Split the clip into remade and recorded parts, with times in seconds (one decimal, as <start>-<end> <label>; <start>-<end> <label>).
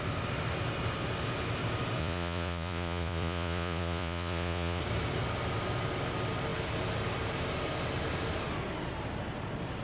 0.0-2.0 recorded; 2.0-4.8 remade; 4.8-9.8 recorded